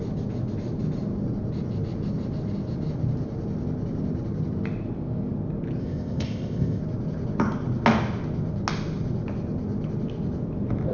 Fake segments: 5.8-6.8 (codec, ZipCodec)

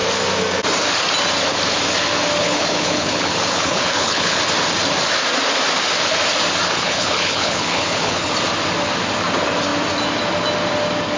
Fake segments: 2.4-4.4 (codec, HILCodec); 6.7-8.3

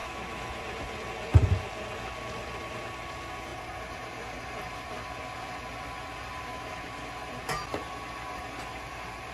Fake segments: 0.0-0.6 (autoencoder, DAC-VAE); 6.4-7.1

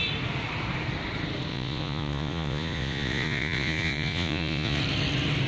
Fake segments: 1.5-4.8 (vocoder, Vocos)

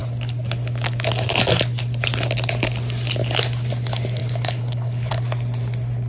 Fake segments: 4.2-5.1 (codec, HILCodec)